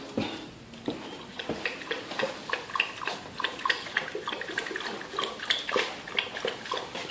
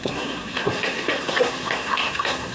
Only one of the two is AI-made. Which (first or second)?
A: second